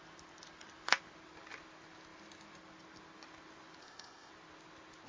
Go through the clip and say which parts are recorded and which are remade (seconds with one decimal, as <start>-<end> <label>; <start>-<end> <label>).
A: 0.0-3.8 recorded; 3.8-4.3 remade; 4.3-5.1 recorded